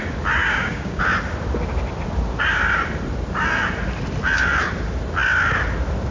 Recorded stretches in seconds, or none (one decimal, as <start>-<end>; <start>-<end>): 0.0-0.4; 1.0-6.1